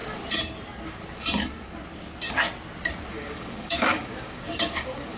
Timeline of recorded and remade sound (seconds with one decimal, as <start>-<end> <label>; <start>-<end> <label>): 0.0-3.1 recorded; 3.1-5.2 remade